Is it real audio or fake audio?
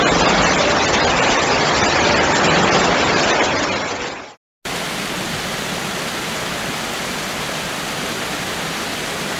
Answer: real